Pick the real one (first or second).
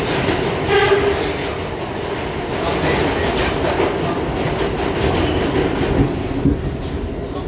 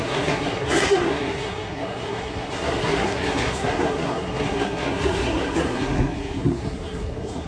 first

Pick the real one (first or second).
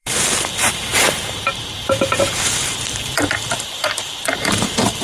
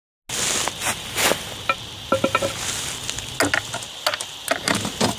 second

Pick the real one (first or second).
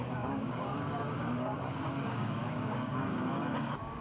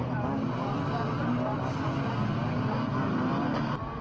second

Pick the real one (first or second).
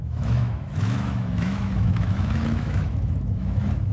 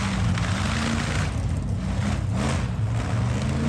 second